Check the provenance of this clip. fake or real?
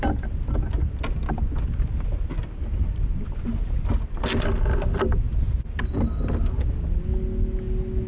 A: real